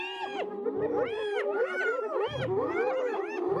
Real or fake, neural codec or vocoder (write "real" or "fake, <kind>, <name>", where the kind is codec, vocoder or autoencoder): fake, vocoder, BigVGAN v2